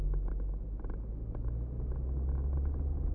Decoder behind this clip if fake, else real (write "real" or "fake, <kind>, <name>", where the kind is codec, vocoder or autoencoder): real